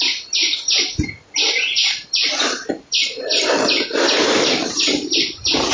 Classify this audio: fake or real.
real